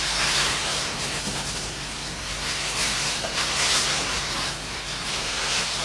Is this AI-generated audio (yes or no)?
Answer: yes